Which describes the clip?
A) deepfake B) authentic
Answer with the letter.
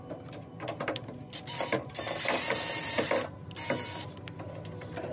B